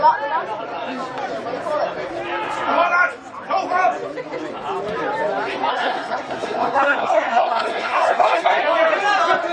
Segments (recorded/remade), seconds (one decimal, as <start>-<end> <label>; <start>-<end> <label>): 0.0-5.7 recorded; 5.7-8.6 remade; 8.6-9.5 recorded